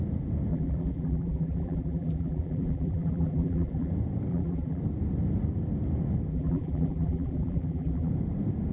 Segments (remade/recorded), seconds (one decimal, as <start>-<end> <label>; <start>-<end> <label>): 0.0-0.5 recorded; 0.5-3.9 remade; 3.9-4.3 recorded; 4.3-4.8 remade; 4.8-6.3 recorded; 6.3-8.1 remade; 8.1-8.7 recorded